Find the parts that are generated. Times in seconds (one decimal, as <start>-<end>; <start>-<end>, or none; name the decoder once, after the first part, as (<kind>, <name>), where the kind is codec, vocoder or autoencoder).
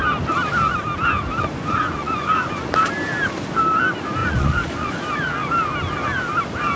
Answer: 1.5-2.7 (vocoder, Vocos); 4.2-5.0